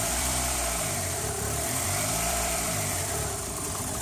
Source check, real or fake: fake